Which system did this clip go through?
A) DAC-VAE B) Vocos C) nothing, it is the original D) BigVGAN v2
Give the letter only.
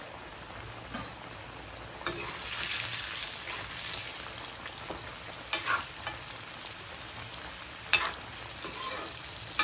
C